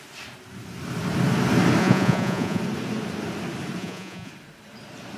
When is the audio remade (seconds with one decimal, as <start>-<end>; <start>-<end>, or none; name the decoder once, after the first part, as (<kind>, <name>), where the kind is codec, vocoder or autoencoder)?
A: 1.8-2.6 (vocoder, Vocos); 3.8-4.3